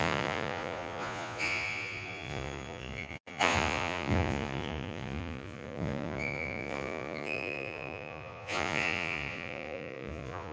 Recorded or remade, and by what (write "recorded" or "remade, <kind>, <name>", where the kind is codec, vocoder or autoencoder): remade, vocoder, Vocos